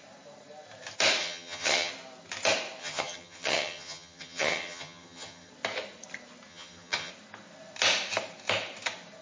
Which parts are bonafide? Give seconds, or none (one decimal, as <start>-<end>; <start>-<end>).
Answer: 0.0-1.2; 1.9-2.8; 5.5-6.5; 7.1-9.2

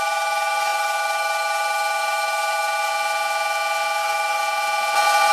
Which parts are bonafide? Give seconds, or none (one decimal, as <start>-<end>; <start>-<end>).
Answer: 2.9-4.0; 4.4-5.3